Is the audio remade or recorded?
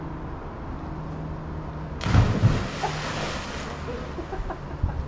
recorded